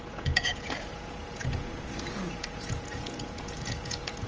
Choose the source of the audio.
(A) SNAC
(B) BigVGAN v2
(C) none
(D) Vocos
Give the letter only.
D